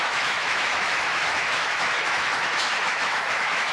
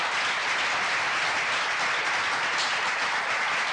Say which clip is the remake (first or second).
first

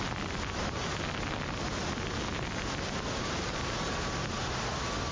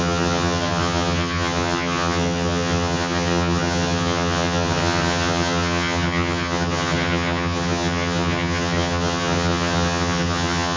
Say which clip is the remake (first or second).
second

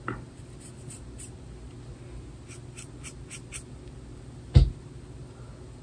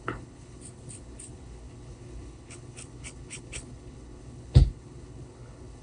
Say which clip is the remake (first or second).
second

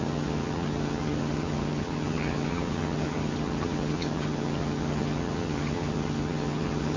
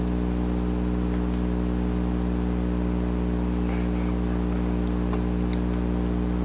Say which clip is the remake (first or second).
first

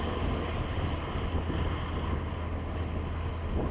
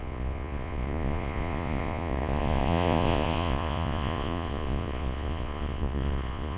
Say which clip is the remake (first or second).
second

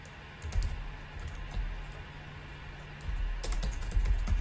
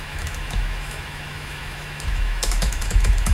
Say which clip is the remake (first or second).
second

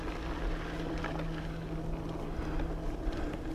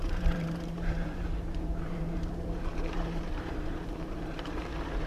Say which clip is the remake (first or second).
second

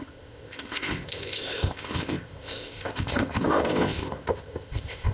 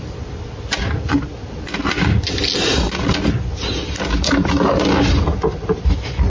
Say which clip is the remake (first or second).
first